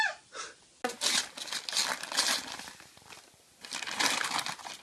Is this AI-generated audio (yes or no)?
no